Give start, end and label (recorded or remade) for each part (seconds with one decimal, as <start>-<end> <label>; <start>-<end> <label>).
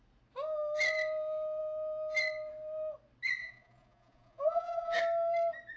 0.0-3.4 recorded; 3.4-5.0 remade; 5.0-5.8 recorded